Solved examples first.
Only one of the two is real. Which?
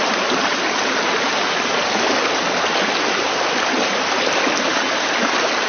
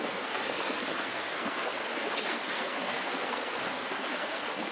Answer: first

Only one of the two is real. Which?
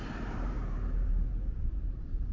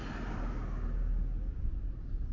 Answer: second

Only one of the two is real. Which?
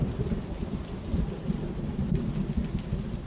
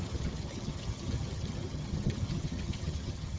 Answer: first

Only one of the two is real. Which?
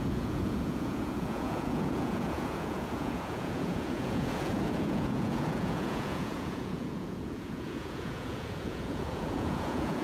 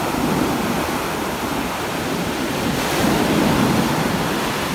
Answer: second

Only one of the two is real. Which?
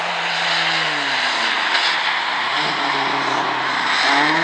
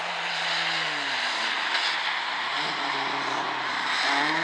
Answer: first